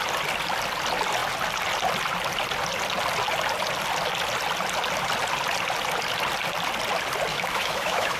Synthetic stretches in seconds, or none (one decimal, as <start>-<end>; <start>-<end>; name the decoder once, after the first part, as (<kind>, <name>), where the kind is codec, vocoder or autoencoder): 7.3-8.2 (autoencoder, DAC-VAE)

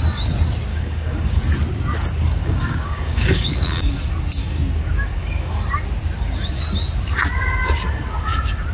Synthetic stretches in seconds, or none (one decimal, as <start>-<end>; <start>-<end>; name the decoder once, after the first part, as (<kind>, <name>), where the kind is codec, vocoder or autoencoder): 0.7-1.4 (codec, DAC); 2.4-3.9; 4.4-5.7

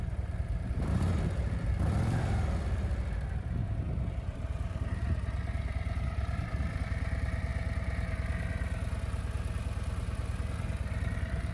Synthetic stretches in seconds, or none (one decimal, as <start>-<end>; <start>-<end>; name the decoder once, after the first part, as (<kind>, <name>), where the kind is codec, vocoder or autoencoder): 0.0-7.5 (vocoder, BigVGAN v2); 10.5-11.5